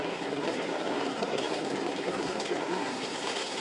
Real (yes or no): no